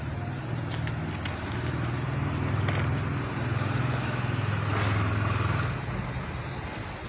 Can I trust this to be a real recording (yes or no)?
yes